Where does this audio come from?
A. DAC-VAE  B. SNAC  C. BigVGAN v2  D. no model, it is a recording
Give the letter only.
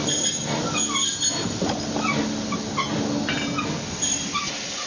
D